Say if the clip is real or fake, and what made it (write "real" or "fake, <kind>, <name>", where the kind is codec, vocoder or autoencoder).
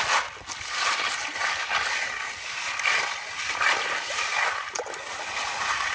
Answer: real